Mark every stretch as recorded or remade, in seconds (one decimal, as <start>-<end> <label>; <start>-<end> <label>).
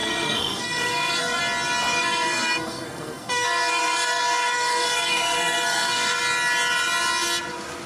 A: 0.0-1.4 remade; 1.4-2.0 recorded; 2.0-6.2 remade; 6.2-7.9 recorded